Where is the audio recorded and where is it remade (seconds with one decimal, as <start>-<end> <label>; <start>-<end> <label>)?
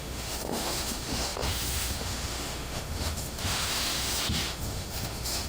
0.0-5.5 remade